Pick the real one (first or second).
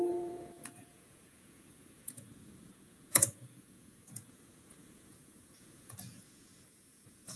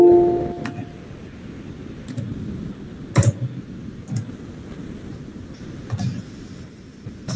second